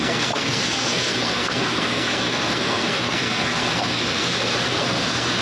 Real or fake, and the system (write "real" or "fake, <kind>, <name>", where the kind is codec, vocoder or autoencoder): fake, codec, SNAC